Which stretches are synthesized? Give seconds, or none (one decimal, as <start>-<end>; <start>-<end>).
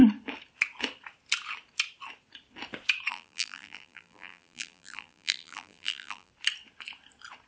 3.1-6.3